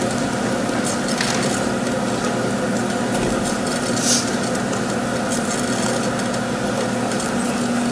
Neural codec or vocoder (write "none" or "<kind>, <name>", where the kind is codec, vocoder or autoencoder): none